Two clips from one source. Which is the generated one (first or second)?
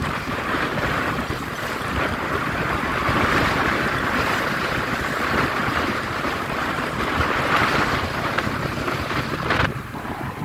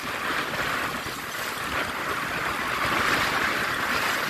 first